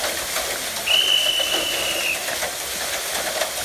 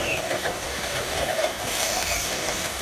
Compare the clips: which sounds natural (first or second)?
first